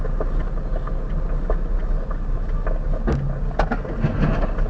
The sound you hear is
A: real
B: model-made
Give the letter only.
A